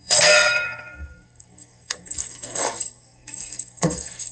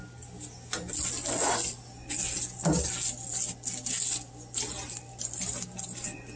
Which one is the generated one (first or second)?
first